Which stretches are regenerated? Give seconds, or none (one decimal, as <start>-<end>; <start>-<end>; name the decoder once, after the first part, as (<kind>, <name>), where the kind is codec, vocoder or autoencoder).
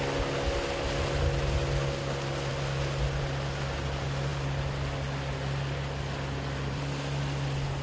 none